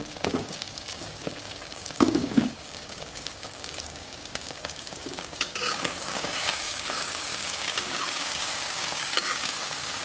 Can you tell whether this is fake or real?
fake